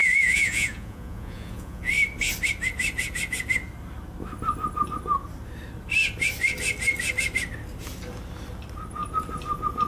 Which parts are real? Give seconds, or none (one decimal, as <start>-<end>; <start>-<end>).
1.9-9.9

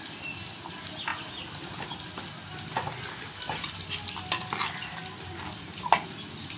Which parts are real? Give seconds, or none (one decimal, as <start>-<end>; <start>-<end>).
0.0-6.6

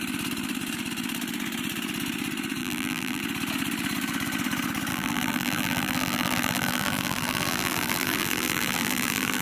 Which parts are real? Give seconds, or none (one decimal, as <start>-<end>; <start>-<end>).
0.0-2.6; 3.2-4.9

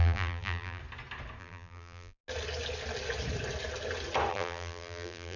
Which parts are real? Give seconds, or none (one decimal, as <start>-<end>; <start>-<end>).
0.8-1.4; 2.2-4.3

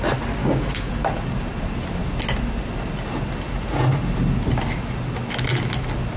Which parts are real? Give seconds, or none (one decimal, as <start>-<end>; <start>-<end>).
0.0-0.4; 0.9-6.2